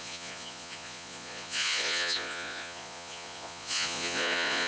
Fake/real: fake